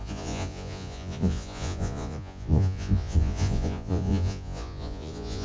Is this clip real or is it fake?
fake